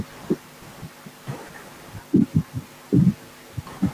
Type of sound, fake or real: real